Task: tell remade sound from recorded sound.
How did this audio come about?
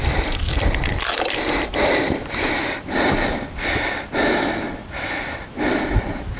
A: remade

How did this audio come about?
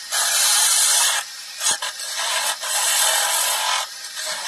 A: recorded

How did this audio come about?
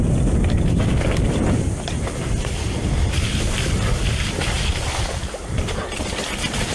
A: recorded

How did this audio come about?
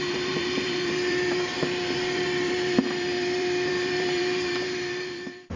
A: remade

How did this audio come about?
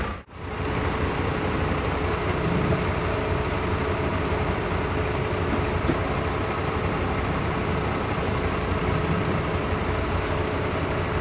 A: remade